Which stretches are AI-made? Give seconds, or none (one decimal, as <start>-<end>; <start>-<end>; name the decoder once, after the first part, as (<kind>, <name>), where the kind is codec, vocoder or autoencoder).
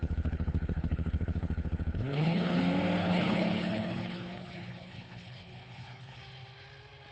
0.0-2.6 (codec, HILCodec); 3.0-6.2